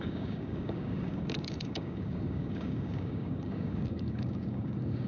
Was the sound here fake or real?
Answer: fake